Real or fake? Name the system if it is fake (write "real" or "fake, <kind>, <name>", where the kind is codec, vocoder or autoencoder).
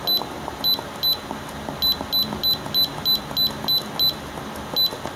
real